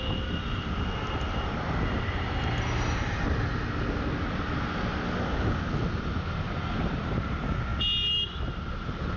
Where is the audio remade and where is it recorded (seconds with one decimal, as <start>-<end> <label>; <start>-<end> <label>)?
0.0-9.2 recorded